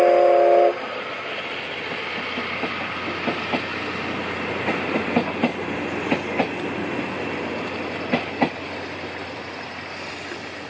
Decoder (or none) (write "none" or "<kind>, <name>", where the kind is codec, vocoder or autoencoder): none